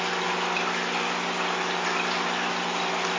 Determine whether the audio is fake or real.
real